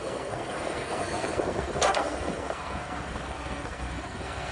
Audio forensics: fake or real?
fake